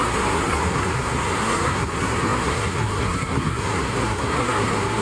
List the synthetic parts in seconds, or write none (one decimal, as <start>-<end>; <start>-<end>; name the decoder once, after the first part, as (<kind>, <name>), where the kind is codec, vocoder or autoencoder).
0.0-5.0 (codec, SNAC)